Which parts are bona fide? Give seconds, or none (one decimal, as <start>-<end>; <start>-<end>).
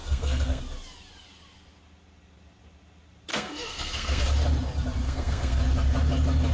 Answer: 0.6-3.3; 4.2-5.0; 5.6-6.5